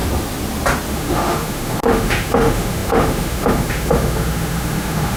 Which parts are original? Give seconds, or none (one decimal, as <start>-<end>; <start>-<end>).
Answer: 0.0-0.9

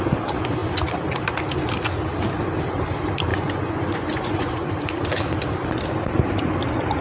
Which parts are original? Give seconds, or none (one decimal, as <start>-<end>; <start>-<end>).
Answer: 0.0-3.3; 4.7-7.0

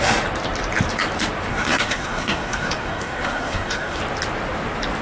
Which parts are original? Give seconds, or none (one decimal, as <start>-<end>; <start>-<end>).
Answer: 0.0-1.5; 4.0-5.0

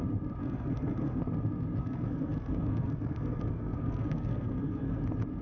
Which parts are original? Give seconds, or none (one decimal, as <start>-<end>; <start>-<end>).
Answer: 0.0-0.4; 1.2-1.8; 5.0-5.4

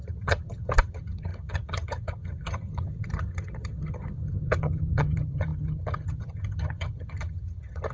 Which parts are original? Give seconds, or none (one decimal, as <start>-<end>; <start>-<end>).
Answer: none

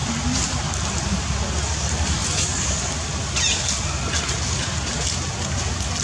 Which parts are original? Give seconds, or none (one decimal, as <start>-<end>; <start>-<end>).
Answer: 0.0-6.0